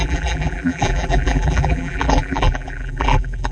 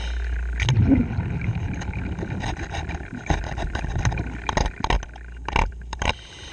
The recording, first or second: second